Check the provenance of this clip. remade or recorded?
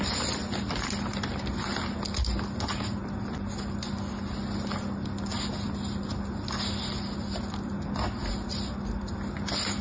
recorded